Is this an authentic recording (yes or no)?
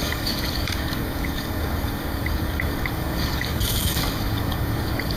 no